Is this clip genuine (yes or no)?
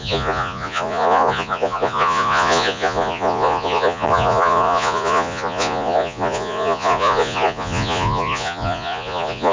no